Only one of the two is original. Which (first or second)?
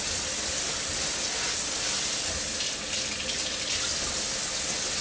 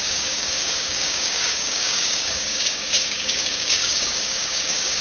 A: first